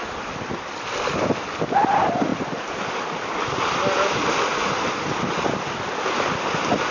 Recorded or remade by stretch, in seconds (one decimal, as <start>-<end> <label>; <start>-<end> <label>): 0.0-6.9 recorded